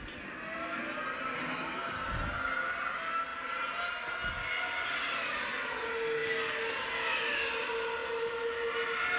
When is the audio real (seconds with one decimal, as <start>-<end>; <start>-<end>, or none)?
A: 0.0-9.2